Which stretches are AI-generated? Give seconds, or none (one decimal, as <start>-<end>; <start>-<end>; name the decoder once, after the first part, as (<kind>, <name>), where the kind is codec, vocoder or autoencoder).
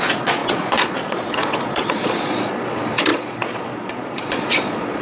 0.0-5.0 (vocoder, Vocos)